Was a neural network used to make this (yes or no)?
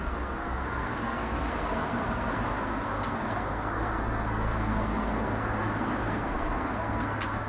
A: yes